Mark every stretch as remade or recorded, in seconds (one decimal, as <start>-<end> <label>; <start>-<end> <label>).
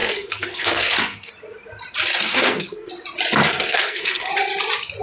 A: 0.0-1.3 remade; 1.3-2.1 recorded; 2.1-2.9 remade; 2.9-3.4 recorded; 3.4-4.3 remade; 4.3-5.0 recorded